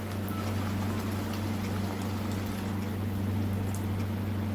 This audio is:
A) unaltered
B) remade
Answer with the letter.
A